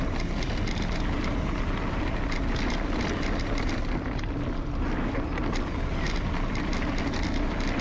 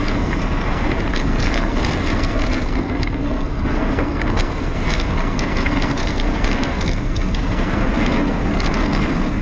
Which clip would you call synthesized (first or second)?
second